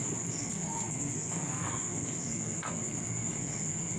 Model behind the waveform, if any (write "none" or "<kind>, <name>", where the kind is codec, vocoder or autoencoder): codec, SNAC